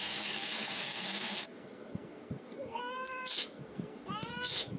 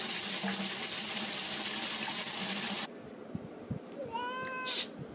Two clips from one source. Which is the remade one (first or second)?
first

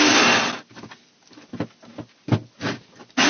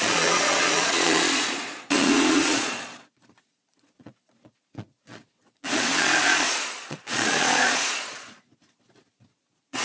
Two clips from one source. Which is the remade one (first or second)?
second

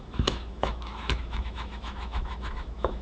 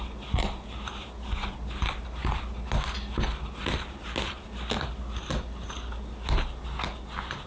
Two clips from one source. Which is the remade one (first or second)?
first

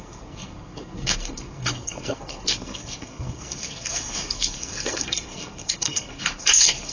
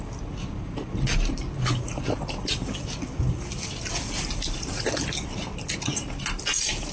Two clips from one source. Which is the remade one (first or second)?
first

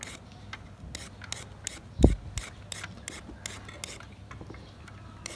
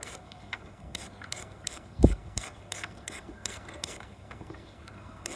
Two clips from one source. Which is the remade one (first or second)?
second